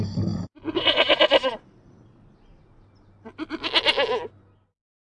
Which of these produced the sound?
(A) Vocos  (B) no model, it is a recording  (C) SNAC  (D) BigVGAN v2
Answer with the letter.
B